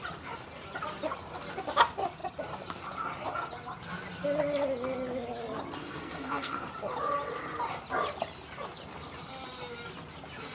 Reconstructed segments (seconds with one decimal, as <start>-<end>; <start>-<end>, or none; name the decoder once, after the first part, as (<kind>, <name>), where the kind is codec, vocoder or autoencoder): 5.8-6.7 (codec, SNAC)